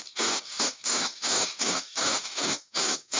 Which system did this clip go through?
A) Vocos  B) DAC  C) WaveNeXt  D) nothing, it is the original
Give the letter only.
B